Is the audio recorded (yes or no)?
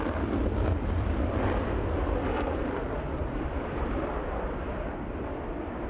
no